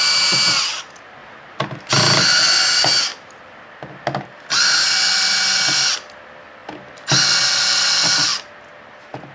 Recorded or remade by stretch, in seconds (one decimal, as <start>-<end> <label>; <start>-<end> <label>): 0.0-9.3 recorded